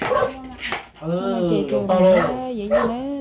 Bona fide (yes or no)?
yes